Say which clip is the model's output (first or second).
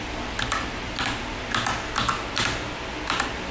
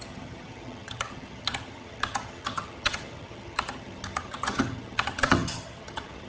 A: second